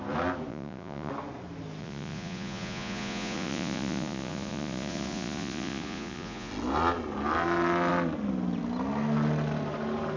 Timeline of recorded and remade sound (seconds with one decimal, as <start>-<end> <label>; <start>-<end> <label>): 0.0-0.5 recorded; 0.5-1.1 remade; 1.1-1.8 recorded; 1.8-6.5 remade; 6.5-10.2 recorded